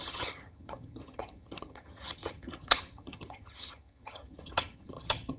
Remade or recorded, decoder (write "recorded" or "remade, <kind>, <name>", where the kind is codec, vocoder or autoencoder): remade, vocoder, HiFi-GAN